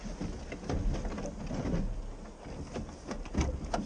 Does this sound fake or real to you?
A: real